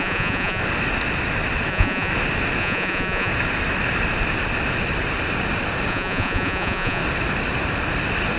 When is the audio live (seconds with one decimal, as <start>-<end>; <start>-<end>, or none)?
0.6-1.7; 2.1-2.6; 3.3-5.9; 7.0-8.4